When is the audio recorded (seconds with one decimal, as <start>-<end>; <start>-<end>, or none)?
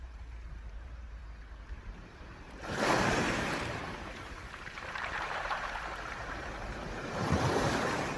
1.2-1.8